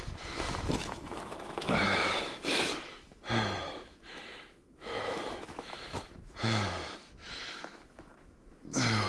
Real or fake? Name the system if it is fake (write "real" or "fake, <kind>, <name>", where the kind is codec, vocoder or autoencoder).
fake, autoencoder, DAC-VAE